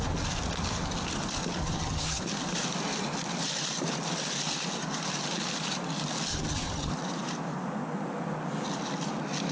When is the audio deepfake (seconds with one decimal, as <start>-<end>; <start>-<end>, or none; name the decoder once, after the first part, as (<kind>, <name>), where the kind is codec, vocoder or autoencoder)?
1.6-2.2 (vocoder, HiFi-GAN); 6.3-6.9